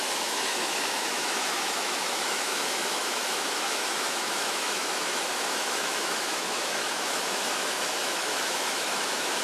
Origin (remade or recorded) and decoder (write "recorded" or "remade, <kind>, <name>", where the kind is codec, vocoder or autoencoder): remade, autoencoder, DAC-VAE